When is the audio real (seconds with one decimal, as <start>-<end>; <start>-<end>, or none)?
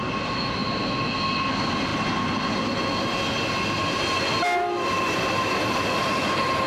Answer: 0.0-6.7